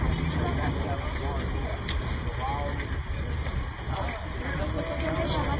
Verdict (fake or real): real